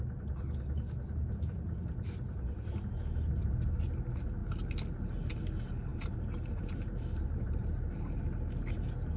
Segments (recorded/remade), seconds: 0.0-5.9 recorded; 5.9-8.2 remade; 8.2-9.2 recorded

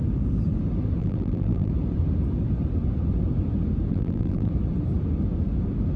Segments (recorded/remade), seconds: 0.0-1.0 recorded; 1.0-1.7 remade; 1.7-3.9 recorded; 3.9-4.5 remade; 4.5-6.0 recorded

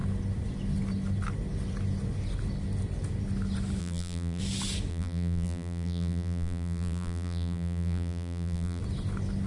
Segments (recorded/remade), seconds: 0.0-3.8 recorded; 3.8-4.4 remade; 4.4-4.9 recorded; 4.9-8.8 remade; 8.8-9.5 recorded

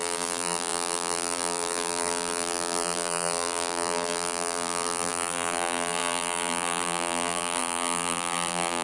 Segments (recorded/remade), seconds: 0.0-8.8 remade